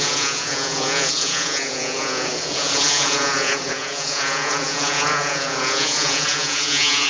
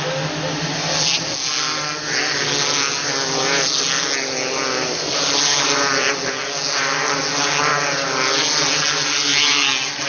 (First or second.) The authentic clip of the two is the second